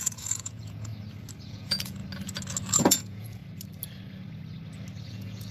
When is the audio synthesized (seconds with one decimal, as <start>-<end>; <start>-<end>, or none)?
0.0-0.9; 1.5-2.0; 2.8-3.4; 5.1-5.5